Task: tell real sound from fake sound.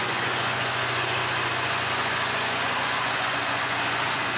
fake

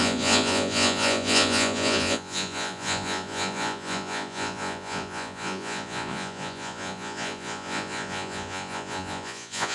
fake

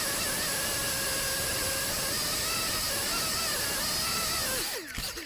real